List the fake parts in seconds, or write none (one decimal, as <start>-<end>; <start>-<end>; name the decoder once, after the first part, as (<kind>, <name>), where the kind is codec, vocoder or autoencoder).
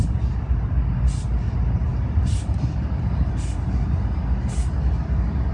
none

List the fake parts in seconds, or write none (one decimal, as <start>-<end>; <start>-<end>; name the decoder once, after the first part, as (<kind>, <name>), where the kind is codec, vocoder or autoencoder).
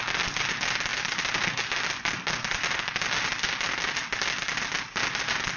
none